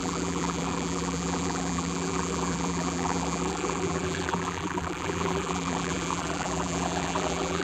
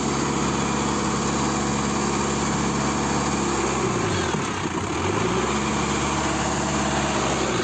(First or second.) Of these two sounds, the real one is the second